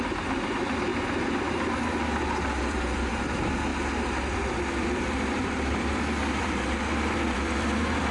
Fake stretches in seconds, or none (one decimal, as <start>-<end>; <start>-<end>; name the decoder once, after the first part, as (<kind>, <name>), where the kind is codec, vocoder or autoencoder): 0.0-0.9 (vocoder, BigVGAN v2); 2.6-3.7; 4.5-8.1